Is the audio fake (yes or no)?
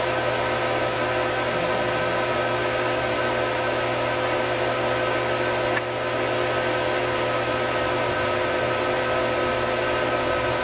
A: no